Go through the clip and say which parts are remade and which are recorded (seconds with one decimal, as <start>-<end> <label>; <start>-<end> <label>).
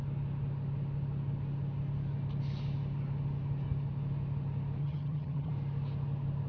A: 0.0-4.8 recorded; 4.8-5.5 remade; 5.5-6.5 recorded